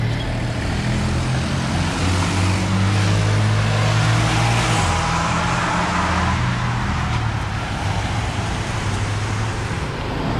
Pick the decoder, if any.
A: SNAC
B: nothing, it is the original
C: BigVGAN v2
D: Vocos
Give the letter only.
B